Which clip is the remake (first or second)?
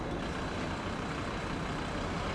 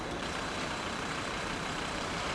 second